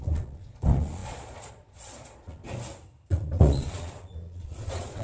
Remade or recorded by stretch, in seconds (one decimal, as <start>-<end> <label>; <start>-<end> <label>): 0.0-2.4 remade; 2.4-3.1 recorded; 3.1-5.0 remade